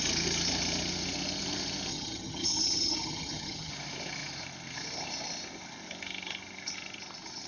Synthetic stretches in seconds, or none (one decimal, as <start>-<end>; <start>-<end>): 1.9-3.7